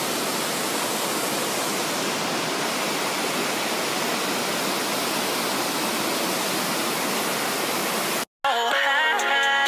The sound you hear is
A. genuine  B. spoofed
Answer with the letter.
A